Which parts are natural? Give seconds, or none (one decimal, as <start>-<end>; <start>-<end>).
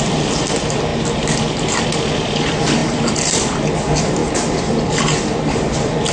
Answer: 0.9-2.1